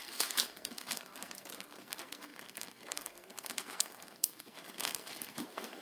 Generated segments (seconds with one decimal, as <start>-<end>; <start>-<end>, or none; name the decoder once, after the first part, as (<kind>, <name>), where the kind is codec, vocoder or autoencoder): 0.0-5.8 (codec, SNAC)